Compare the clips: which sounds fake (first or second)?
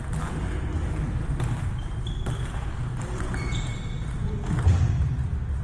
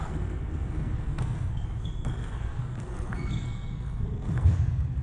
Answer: second